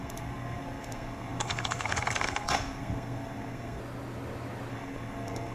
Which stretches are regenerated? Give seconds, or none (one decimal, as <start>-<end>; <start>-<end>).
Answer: 0.0-3.8; 4.7-5.5